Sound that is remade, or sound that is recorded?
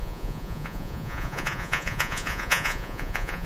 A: remade